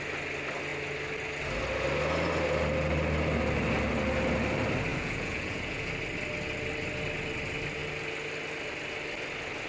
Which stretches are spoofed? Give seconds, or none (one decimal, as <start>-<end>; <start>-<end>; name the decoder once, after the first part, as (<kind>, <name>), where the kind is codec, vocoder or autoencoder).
4.9-5.9 (vocoder, Vocos)